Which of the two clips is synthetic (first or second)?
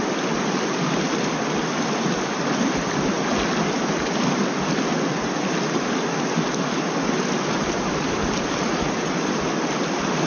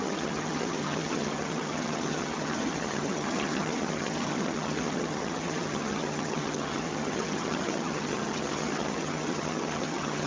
second